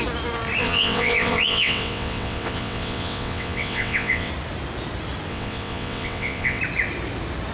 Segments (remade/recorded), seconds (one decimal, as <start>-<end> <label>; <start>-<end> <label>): 0.0-0.6 recorded; 0.6-4.3 remade; 4.3-5.3 recorded; 5.3-6.6 remade; 6.6-7.5 recorded